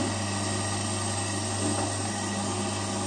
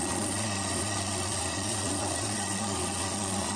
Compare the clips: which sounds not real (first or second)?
second